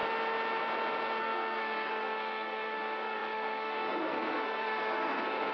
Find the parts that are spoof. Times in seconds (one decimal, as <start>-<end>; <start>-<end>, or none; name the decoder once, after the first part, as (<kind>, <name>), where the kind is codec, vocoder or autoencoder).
1.2-5.5 (codec, SNAC)